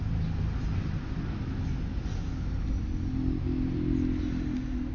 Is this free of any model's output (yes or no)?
yes